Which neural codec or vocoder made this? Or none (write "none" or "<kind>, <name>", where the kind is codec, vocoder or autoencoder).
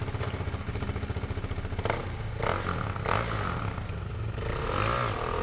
none